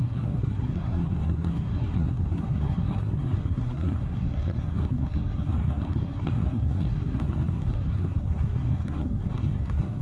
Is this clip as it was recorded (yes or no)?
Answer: no